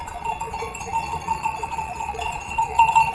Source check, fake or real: fake